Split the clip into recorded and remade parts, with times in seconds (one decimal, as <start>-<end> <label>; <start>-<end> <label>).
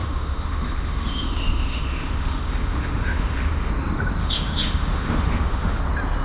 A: 0.0-3.7 remade; 3.7-4.2 recorded; 4.2-5.8 remade; 5.8-6.2 recorded